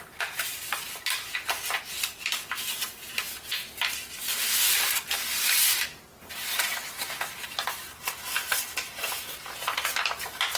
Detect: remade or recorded recorded